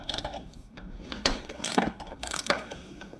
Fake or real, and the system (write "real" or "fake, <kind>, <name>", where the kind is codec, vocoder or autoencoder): fake, codec, SNAC